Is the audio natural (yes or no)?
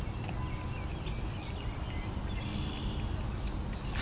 yes